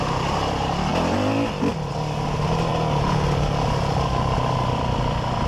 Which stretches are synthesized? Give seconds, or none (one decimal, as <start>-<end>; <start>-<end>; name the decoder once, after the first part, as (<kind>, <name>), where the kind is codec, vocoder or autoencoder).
none